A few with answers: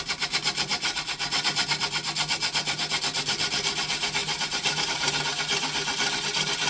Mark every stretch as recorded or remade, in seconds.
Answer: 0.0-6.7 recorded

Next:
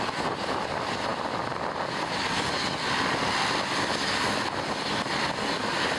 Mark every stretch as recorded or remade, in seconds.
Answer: 0.0-6.0 recorded

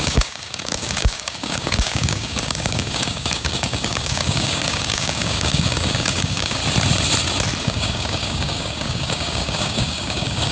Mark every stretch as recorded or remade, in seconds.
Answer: 0.0-6.6 remade; 6.6-7.6 recorded; 7.6-10.5 remade